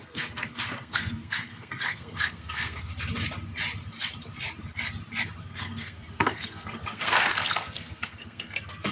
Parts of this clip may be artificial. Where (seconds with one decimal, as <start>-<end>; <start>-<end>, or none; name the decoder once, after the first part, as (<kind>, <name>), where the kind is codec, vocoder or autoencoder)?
0.0-2.9 (codec, SNAC); 5.4-8.9